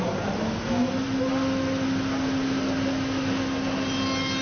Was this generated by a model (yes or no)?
no